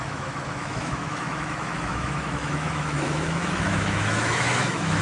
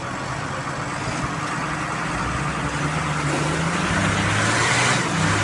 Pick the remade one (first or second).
first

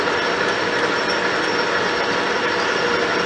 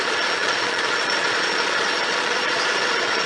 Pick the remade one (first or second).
second